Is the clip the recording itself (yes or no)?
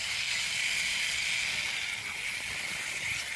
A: yes